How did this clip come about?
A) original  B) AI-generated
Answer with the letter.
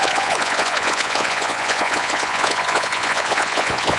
B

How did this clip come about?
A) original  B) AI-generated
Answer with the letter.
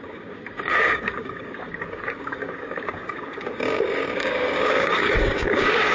B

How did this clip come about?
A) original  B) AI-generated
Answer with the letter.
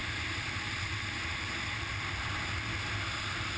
A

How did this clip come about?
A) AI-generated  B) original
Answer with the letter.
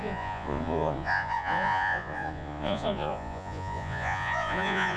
A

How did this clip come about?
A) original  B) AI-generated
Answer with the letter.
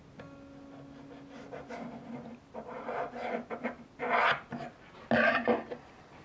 A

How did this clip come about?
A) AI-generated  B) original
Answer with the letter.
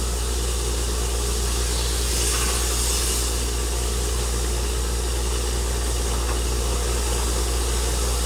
B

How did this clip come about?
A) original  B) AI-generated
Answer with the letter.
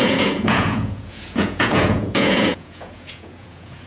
B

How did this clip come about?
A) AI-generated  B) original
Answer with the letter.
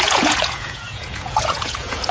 A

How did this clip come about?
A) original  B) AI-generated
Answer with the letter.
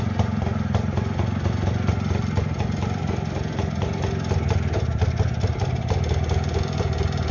A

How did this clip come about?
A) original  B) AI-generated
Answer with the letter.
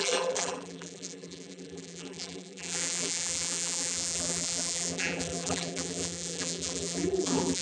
B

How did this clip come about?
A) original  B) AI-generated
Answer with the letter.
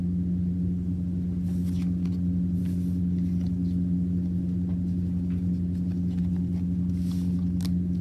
A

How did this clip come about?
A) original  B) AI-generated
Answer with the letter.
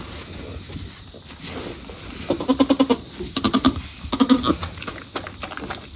A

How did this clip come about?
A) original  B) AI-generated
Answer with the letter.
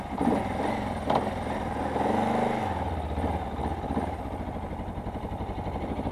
A